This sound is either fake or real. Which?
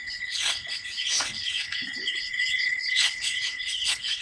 fake